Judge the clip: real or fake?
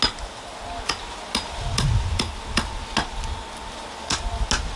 real